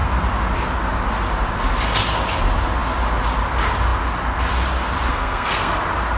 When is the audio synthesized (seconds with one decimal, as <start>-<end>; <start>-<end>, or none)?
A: 5.1-5.8